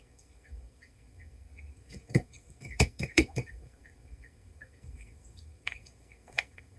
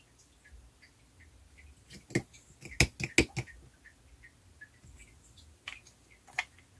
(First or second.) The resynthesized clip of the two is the first